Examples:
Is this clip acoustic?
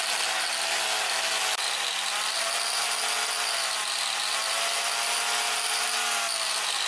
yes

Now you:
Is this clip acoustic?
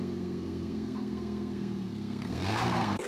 no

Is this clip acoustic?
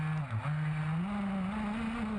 yes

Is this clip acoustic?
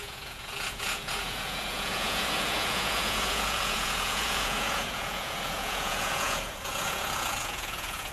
no